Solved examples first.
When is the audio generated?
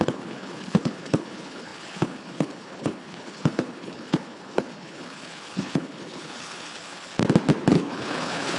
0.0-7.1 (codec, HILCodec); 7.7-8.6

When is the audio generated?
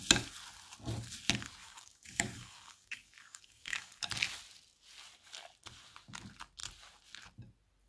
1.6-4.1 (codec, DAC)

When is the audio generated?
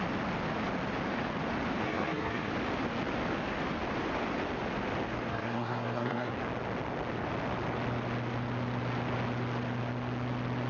1.8-2.5 (codec, SNAC); 5.3-6.3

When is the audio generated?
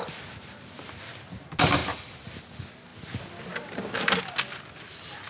1.8-2.4 (vocoder, BigVGAN v2)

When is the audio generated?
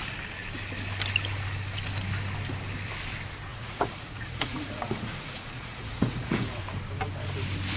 3.5-6.6 (vocoder, Vocos)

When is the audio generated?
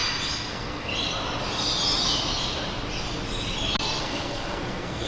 0.5-0.9 (codec, SNAC); 4.0-5.1